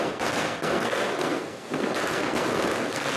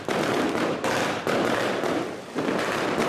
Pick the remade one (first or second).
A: first